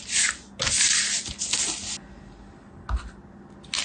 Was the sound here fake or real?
real